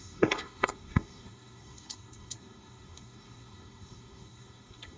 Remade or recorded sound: remade